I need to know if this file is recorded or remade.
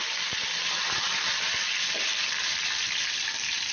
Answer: remade